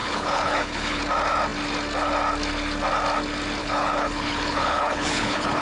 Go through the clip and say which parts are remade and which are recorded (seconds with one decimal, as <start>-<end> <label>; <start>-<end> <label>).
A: 0.0-1.0 remade; 1.0-3.6 recorded; 3.6-5.6 remade